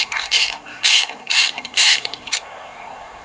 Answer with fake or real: fake